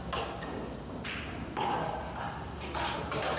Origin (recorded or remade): recorded